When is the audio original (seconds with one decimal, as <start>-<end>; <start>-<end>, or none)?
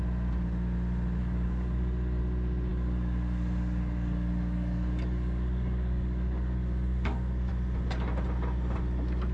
0.0-1.2; 2.2-2.7; 7.5-9.3